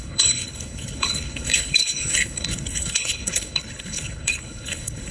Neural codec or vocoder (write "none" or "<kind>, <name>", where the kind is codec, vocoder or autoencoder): codec, HILCodec